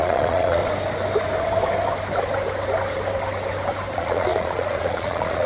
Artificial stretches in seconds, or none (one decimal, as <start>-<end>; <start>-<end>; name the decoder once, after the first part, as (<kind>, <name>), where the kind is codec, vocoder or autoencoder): 0.0-0.6 (vocoder, Vocos); 3.9-5.5